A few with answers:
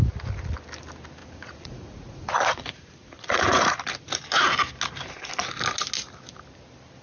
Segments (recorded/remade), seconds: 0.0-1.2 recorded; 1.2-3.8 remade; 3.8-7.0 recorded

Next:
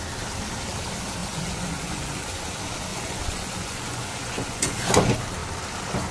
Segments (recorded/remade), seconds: 0.0-1.2 recorded; 1.2-2.4 remade; 2.4-2.9 recorded; 2.9-5.0 remade; 5.0-6.1 recorded

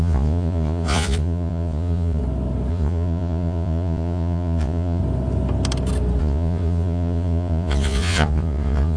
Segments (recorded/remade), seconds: 0.0-2.2 remade; 2.2-2.7 recorded; 2.7-5.0 remade; 5.0-6.2 recorded; 6.2-9.0 remade

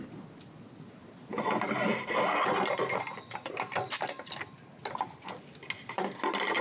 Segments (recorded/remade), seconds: 0.0-6.6 recorded

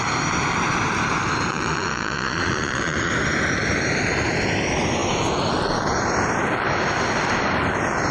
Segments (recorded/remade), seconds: 0.0-1.5 recorded; 1.5-3.1 remade; 3.1-8.1 recorded

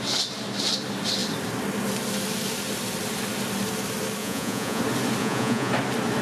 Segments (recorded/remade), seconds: 0.0-4.2 recorded; 4.2-4.8 remade; 4.8-5.2 recorded; 5.2-5.7 remade; 5.7-6.2 recorded